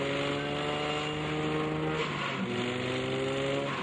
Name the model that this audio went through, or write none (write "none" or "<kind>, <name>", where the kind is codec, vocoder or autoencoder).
none